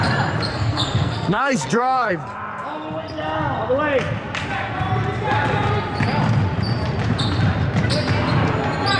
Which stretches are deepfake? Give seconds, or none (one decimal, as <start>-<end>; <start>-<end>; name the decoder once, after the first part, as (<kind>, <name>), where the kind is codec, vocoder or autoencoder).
0.5-2.1 (codec, SNAC)